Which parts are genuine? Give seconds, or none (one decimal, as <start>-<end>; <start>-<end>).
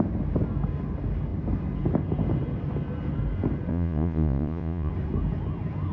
0.0-3.7; 4.9-5.9